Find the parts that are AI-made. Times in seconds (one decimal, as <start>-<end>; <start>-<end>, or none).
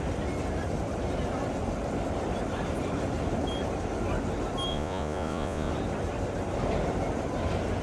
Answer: 4.7-5.7